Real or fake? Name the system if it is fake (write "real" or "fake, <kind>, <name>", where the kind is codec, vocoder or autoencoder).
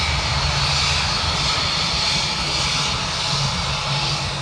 real